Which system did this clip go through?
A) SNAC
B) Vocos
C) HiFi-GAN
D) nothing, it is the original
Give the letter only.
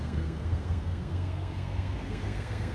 A